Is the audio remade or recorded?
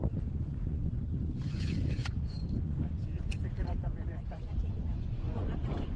remade